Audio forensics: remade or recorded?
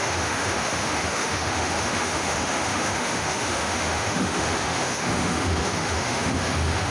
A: remade